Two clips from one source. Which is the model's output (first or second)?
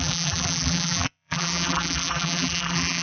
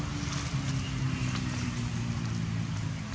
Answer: first